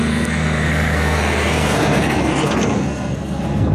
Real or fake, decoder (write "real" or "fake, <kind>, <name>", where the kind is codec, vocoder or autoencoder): fake, codec, SNAC